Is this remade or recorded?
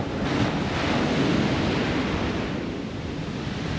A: recorded